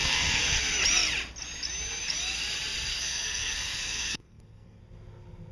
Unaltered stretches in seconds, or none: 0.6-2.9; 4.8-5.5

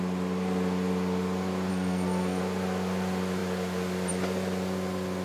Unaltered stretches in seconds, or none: 0.0-1.7; 2.4-5.2